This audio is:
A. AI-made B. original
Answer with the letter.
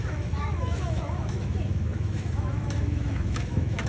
A